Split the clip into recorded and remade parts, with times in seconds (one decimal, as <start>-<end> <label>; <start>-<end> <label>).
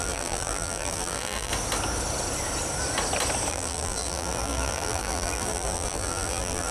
0.0-1.5 remade; 1.5-3.5 recorded; 3.5-6.7 remade